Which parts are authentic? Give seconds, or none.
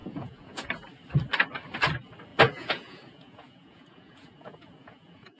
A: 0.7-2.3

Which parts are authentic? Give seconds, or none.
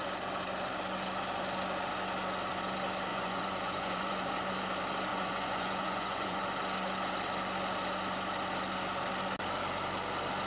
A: 0.0-3.1; 4.3-5.1; 6.4-10.5